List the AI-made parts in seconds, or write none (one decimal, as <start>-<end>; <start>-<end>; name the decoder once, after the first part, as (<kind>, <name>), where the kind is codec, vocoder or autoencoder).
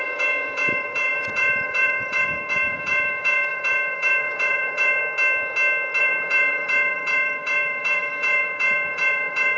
0.0-5.0 (vocoder, Vocos); 6.0-9.6